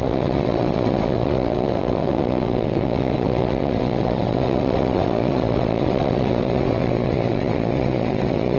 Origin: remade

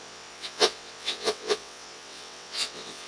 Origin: remade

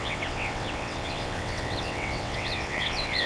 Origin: remade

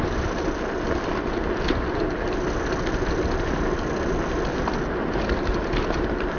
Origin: recorded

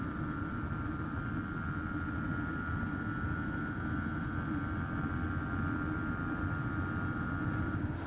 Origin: recorded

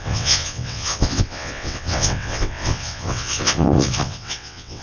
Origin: remade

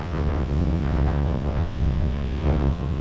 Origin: remade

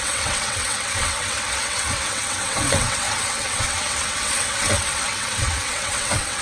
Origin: remade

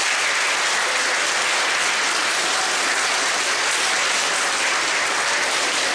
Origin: recorded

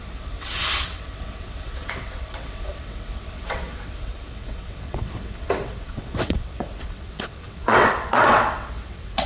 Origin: remade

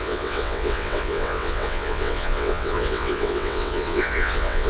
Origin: remade